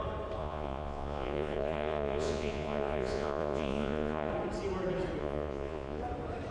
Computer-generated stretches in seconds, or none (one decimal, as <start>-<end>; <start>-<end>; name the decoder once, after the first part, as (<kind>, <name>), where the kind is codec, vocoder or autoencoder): 0.4-4.3 (vocoder, Vocos); 5.2-6.0